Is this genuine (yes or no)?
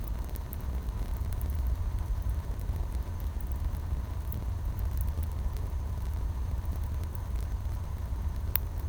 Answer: no